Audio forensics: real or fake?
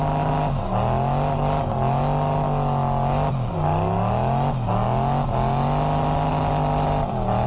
real